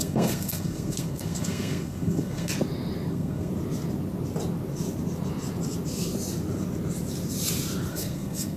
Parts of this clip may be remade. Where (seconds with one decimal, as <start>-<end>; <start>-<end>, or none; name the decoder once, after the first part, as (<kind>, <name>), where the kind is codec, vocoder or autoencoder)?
0.0-2.5 (codec, SNAC); 3.1-3.5; 7.9-8.6